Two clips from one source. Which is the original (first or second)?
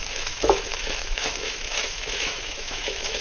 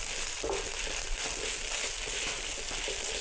second